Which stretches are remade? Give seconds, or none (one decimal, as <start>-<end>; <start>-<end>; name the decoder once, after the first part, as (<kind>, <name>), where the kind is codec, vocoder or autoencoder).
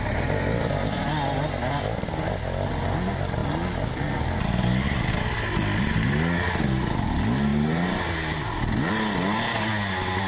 none